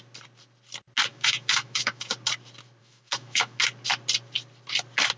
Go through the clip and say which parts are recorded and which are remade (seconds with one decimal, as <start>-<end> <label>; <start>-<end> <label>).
0.0-1.1 recorded; 1.1-2.1 remade; 2.1-2.8 recorded; 2.8-3.6 remade; 3.6-5.2 recorded